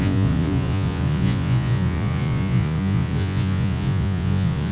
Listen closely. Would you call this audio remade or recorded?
remade